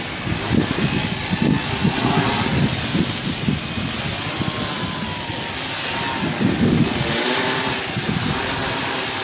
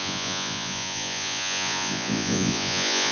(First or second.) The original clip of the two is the first